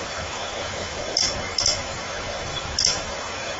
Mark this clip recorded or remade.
remade